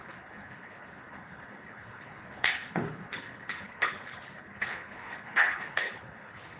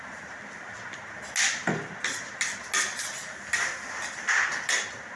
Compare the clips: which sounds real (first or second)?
second